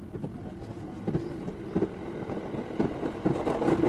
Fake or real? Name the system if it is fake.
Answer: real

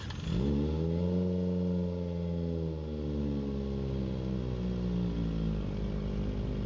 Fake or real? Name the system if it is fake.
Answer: real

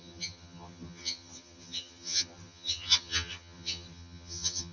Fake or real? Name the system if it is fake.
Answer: fake, vocoder, HiFi-GAN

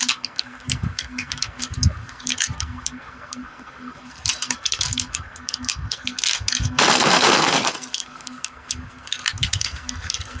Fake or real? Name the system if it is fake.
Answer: fake, codec, SNAC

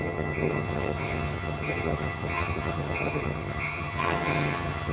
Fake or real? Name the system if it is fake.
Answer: fake, vocoder, HiFi-GAN